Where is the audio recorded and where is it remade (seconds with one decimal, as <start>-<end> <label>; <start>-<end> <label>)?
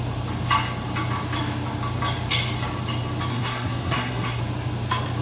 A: 0.0-3.3 recorded; 3.3-4.4 remade; 4.4-5.2 recorded